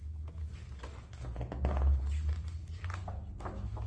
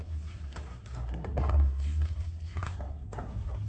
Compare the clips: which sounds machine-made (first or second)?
second